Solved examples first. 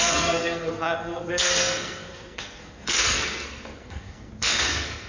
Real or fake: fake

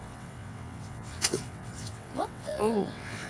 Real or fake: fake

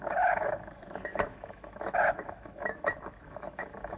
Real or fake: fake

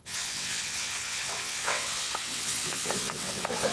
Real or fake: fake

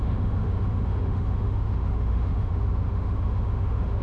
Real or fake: fake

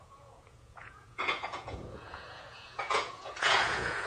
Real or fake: fake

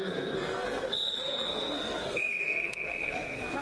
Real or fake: fake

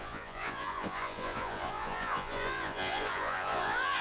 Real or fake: fake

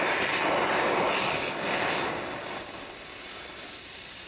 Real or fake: real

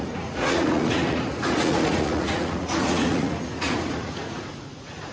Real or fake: fake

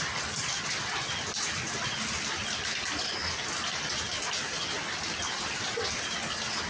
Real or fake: real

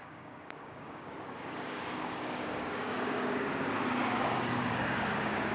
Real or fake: fake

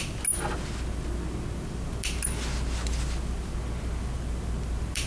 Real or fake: real